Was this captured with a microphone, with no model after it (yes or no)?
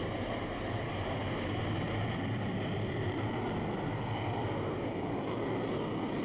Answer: yes